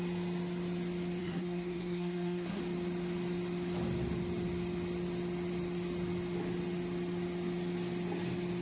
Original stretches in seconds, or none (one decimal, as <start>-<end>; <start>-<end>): 0.0-1.2; 2.6-8.6